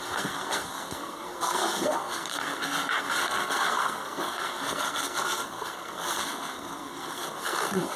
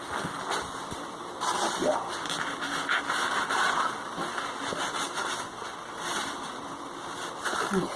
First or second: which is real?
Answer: second